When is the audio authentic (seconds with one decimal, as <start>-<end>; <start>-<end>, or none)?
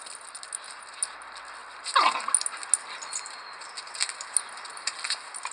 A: 0.0-5.5